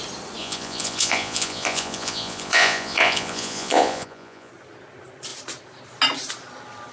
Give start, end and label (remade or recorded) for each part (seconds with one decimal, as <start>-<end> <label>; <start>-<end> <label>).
0.0-0.4 recorded; 0.4-4.5 remade; 4.5-6.9 recorded